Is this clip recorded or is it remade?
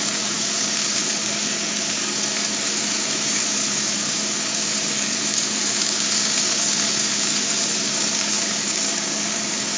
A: remade